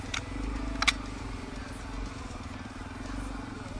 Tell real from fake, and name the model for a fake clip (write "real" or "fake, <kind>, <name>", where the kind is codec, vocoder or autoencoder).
real